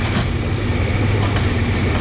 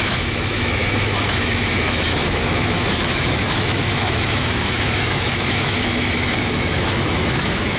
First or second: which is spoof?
second